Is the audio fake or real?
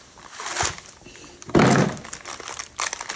real